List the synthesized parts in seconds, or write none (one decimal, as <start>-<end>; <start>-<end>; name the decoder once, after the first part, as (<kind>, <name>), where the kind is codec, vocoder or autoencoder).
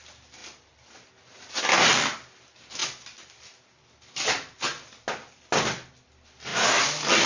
none